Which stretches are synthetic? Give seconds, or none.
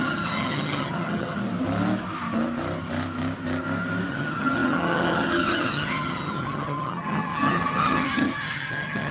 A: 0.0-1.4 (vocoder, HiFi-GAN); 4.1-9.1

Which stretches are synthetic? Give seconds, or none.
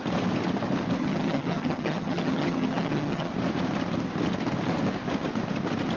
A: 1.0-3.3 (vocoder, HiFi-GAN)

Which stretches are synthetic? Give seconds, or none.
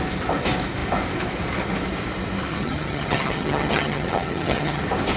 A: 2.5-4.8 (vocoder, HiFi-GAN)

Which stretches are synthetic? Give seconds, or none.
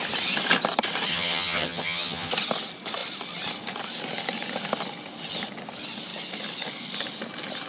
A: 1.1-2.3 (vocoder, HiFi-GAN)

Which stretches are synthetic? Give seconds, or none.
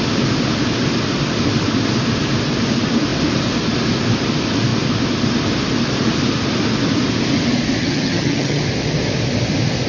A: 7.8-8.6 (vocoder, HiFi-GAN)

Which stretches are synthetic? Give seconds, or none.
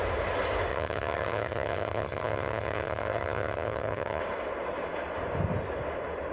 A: 0.7-4.2 (vocoder, HiFi-GAN)